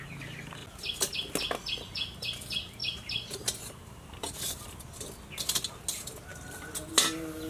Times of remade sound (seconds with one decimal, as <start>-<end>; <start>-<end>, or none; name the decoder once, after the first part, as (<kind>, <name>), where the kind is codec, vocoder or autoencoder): 2.8-4.6 (vocoder, BigVGAN v2)